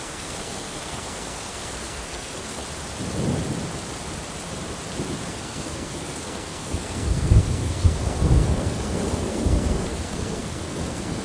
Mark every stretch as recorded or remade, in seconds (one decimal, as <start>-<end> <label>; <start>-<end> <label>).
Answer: 0.0-2.6 remade; 2.6-5.3 recorded; 5.3-11.2 remade